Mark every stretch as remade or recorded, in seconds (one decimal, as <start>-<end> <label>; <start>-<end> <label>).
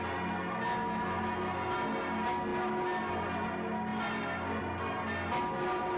0.0-6.0 recorded